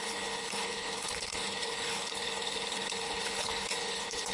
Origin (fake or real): fake